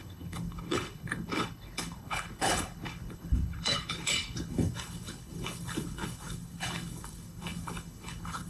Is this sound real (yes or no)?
no